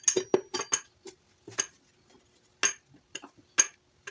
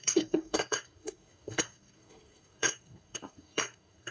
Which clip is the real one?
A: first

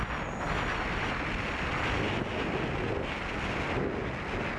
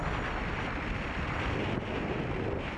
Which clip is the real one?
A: first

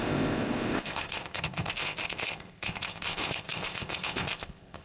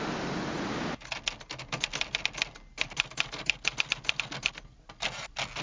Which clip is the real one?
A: second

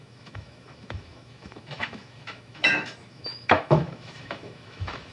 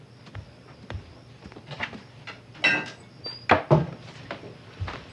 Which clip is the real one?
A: second